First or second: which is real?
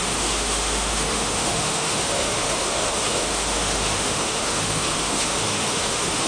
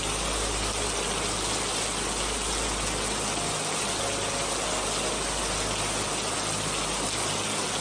second